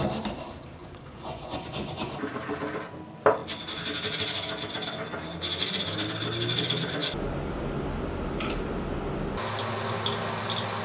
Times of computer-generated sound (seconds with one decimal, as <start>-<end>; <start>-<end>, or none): 0.8-2.1